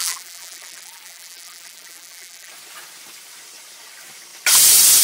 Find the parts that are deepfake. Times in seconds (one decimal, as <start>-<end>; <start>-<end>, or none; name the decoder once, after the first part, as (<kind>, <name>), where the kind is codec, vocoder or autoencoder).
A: 0.0-2.5 (vocoder, BigVGAN v2)